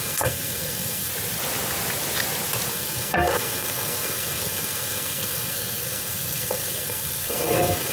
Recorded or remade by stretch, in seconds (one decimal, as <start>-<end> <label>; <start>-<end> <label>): 0.0-1.1 remade; 1.1-2.7 recorded; 2.7-7.9 remade